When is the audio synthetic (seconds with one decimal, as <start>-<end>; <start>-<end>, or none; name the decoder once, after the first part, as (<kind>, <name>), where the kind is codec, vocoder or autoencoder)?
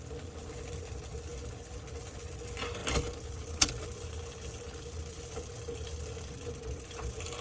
none